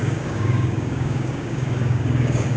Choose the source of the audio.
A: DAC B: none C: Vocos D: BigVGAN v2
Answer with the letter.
A